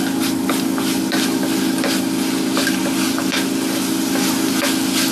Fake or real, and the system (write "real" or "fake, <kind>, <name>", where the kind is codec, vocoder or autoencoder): real